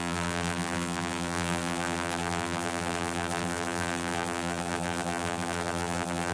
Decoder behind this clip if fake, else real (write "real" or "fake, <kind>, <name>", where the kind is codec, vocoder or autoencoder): fake, vocoder, BigVGAN v2